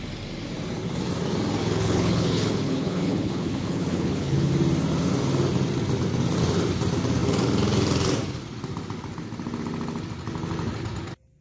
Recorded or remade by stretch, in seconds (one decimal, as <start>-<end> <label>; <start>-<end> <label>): 0.0-1.6 recorded; 1.6-4.5 remade; 4.5-11.4 recorded